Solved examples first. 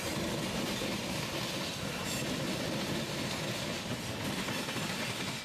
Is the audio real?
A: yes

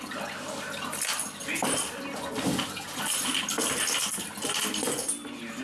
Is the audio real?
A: yes